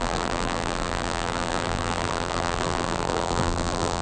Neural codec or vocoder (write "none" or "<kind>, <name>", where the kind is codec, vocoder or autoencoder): vocoder, BigVGAN v2